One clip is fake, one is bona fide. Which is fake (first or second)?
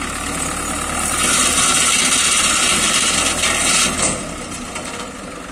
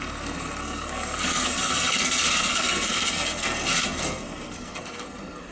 second